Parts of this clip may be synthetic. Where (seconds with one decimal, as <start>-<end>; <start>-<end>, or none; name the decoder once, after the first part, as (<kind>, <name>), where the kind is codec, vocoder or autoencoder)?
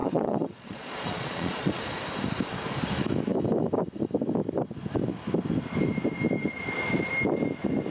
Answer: 0.0-1.8 (vocoder, Vocos)